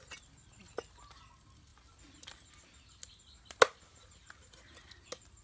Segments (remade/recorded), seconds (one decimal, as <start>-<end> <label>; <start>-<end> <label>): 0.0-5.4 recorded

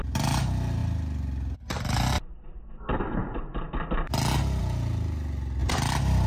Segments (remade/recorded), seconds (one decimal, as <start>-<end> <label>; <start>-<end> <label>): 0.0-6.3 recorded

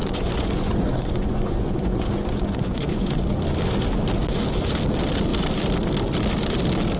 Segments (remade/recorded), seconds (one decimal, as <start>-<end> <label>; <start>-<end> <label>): 0.0-3.2 remade; 3.2-7.0 recorded